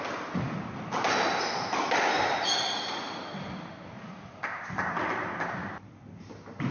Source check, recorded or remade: recorded